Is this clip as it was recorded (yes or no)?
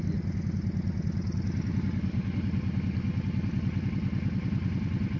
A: yes